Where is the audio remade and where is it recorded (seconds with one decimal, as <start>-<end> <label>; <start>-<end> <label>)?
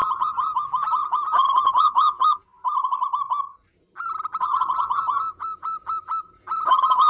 0.0-2.5 remade; 2.5-4.4 recorded; 4.4-7.1 remade